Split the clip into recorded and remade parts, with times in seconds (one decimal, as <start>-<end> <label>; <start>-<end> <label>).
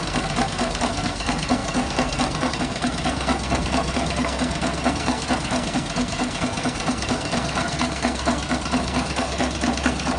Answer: 0.0-10.2 remade